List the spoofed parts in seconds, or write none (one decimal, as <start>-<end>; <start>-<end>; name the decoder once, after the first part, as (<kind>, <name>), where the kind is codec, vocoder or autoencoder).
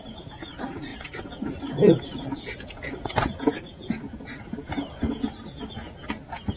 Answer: 0.0-6.6 (vocoder, Vocos)